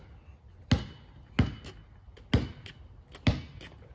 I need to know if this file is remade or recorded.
recorded